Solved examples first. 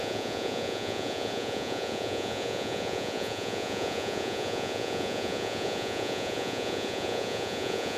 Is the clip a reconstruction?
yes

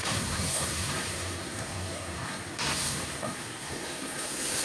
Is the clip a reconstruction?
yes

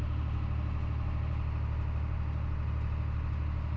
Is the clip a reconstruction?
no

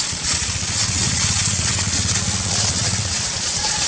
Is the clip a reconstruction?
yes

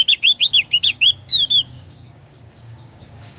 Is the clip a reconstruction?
yes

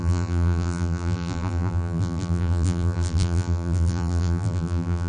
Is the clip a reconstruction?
yes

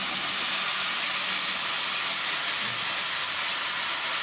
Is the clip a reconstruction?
no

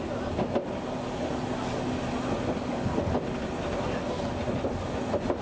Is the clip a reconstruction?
no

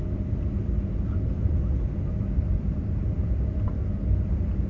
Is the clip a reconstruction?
yes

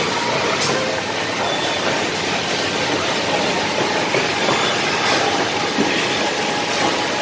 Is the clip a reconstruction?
no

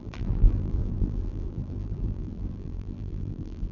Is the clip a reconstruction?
yes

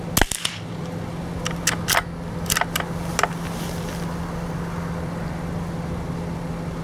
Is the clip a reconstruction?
no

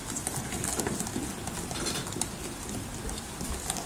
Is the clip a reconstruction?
no